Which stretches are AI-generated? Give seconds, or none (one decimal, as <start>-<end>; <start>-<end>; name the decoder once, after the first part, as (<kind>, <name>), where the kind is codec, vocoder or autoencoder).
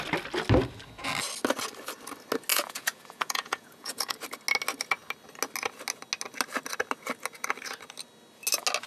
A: 2.5-4.1 (vocoder, Vocos)